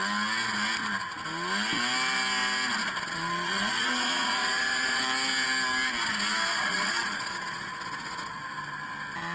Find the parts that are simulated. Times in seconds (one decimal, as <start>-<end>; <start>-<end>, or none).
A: 2.8-5.0; 6.5-8.4